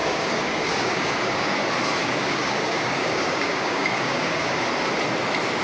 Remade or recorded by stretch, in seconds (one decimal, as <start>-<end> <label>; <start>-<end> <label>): 0.0-1.6 remade; 1.6-2.0 recorded; 2.0-4.6 remade; 4.6-5.6 recorded

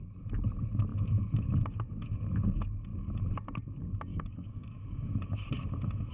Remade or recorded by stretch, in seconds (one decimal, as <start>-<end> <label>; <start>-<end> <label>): 0.0-4.1 recorded; 4.1-4.8 remade; 4.8-6.1 recorded

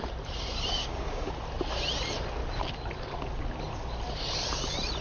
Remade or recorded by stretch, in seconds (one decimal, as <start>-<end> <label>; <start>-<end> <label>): 0.0-0.8 recorded; 0.8-1.3 remade; 1.3-5.0 recorded

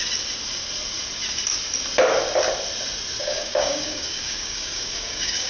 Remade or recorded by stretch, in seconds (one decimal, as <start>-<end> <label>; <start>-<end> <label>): 0.0-3.2 recorded; 3.2-5.5 remade

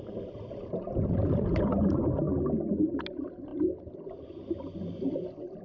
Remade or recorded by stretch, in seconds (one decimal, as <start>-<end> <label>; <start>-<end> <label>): 0.0-5.6 recorded

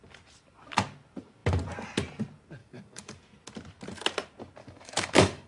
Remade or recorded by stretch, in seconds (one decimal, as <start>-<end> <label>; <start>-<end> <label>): 0.0-2.6 recorded; 2.6-3.2 remade; 3.2-4.6 recorded; 4.6-5.5 remade

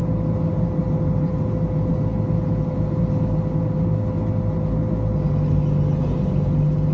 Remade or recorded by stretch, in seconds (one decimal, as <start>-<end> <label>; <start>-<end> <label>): 0.0-6.9 recorded